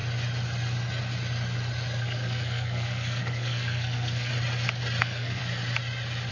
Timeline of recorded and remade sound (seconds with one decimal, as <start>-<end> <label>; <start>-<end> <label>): 0.0-2.0 recorded; 2.0-4.3 remade; 4.3-5.0 recorded; 5.0-5.4 remade; 5.4-6.3 recorded

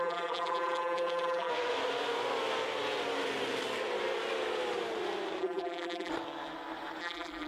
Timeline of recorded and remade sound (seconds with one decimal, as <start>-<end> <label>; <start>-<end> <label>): 0.0-1.5 remade; 1.5-5.4 recorded; 5.4-6.1 remade; 6.1-7.0 recorded; 7.0-7.5 remade

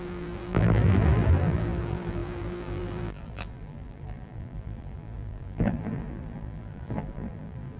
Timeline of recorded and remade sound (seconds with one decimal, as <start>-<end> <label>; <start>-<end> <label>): 0.0-7.8 remade

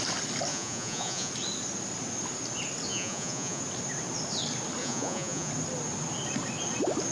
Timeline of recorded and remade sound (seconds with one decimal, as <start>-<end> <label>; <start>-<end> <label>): 0.0-0.5 recorded; 0.5-1.3 remade; 1.3-2.9 recorded; 2.9-3.6 remade; 3.6-4.8 recorded; 4.8-5.5 remade; 5.5-7.1 recorded

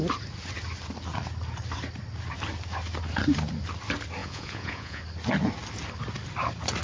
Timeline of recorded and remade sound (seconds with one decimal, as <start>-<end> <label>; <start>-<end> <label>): 0.0-4.2 recorded; 4.2-5.0 remade; 5.0-6.8 recorded

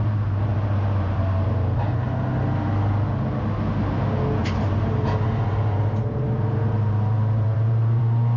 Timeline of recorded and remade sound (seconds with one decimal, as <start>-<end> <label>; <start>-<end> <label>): 0.0-0.5 recorded; 0.5-1.2 remade; 1.2-4.4 recorded; 4.4-8.0 remade; 8.0-8.4 recorded